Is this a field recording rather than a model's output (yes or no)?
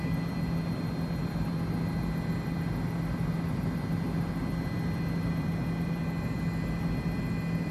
yes